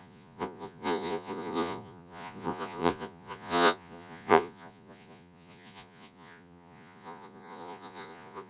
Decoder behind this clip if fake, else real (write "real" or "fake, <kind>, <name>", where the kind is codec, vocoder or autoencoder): fake, vocoder, Vocos